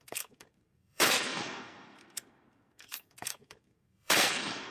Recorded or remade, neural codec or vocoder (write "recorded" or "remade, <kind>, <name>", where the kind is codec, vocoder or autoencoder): remade, codec, SNAC